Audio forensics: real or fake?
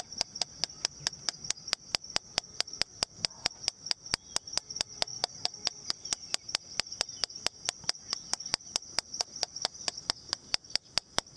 real